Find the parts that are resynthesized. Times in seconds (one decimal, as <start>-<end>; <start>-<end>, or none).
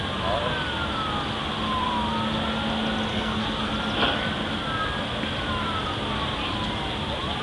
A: 3.1-3.7